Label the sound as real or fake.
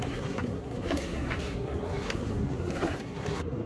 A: fake